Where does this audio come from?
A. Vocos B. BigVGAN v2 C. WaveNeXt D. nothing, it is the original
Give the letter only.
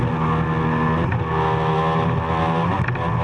D